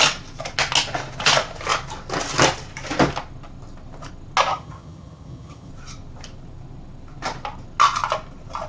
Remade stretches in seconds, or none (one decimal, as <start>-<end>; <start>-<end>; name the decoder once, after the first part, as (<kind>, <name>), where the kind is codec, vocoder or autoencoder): 4.5-5.7 (vocoder, HiFi-GAN)